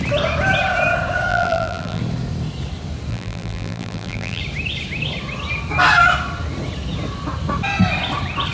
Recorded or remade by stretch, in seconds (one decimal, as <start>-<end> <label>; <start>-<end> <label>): 0.0-1.3 recorded; 1.3-2.0 remade; 2.0-3.1 recorded; 3.1-4.4 remade; 4.4-8.5 recorded

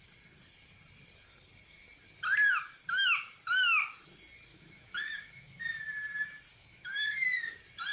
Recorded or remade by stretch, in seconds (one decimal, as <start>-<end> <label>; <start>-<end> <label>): 0.0-4.5 recorded; 4.5-5.6 remade; 5.6-6.5 recorded; 6.5-7.3 remade; 7.3-7.9 recorded

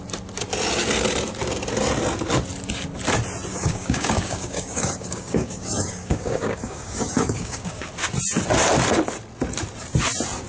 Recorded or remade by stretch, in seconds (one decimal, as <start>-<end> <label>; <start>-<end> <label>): 0.0-3.5 recorded; 3.5-7.9 remade; 7.9-10.5 recorded